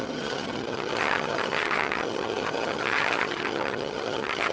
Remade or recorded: remade